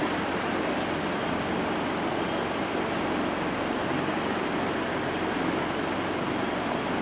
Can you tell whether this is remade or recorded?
recorded